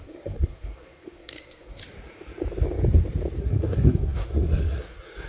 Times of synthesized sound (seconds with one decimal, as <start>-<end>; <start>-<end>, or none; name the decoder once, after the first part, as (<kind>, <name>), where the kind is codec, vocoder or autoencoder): 0.0-1.8 (codec, SNAC); 3.4-5.3